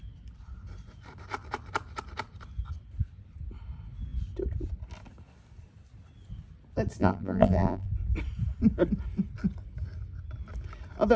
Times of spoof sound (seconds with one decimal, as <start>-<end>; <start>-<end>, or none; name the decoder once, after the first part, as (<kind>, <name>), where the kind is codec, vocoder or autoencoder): 7.0-7.9 (vocoder, BigVGAN v2)